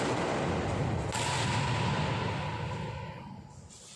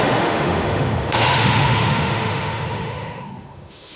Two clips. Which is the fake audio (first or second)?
second